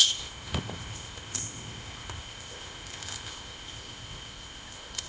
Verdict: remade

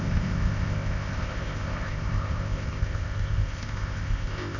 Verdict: remade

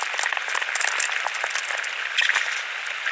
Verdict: recorded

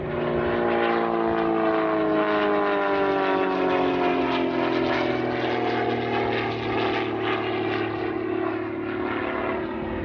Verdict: recorded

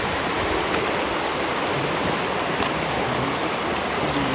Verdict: recorded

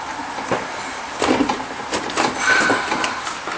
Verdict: recorded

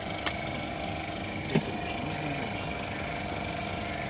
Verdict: recorded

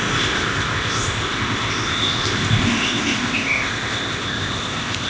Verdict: remade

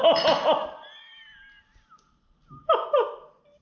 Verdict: recorded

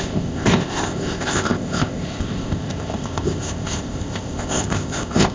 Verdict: remade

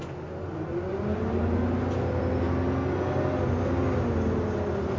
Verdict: recorded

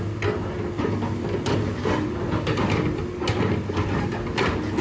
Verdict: recorded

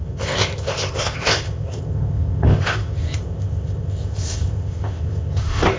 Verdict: remade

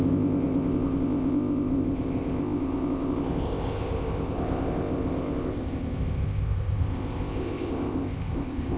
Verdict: remade